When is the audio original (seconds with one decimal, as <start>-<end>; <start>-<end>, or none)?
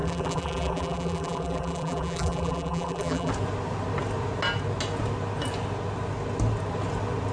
3.3-7.3